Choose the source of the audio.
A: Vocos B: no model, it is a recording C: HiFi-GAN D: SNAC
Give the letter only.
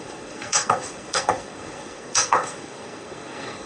D